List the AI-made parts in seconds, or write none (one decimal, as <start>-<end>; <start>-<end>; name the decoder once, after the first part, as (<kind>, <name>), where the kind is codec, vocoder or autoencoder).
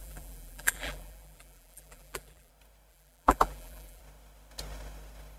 0.0-2.5 (vocoder, BigVGAN v2); 2.9-4.0